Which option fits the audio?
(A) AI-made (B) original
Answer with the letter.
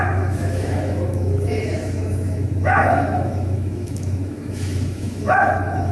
A